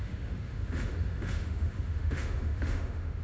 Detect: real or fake fake